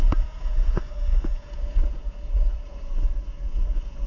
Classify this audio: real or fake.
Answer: fake